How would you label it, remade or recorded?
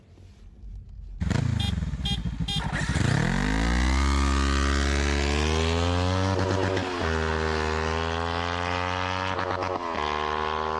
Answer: recorded